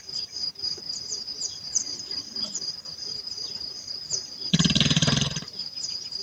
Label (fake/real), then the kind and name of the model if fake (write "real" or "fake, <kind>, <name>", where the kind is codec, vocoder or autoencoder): fake, vocoder, BigVGAN v2